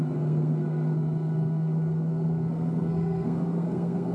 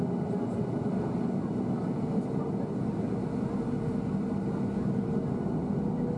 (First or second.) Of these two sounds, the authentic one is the second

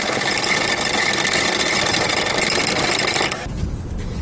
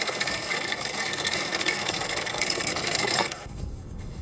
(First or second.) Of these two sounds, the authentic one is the first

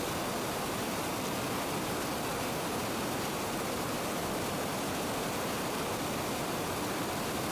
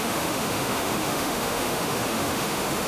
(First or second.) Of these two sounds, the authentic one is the first